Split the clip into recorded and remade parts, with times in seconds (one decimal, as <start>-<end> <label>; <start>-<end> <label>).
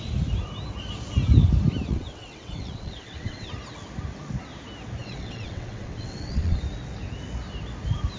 0.0-1.9 recorded; 1.9-3.5 remade; 3.5-5.0 recorded; 5.0-6.6 remade; 6.6-8.2 recorded